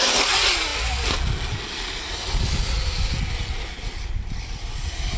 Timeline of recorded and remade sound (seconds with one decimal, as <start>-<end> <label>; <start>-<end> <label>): 0.0-5.2 recorded